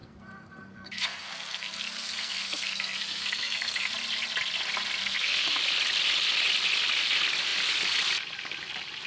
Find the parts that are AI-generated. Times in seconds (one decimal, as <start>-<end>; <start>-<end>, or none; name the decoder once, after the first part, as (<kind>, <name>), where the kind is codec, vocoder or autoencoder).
0.0-3.9 (codec, SNAC); 5.0-5.6